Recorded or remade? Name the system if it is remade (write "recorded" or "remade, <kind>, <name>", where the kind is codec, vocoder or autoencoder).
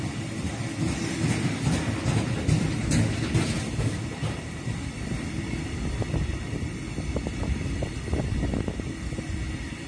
recorded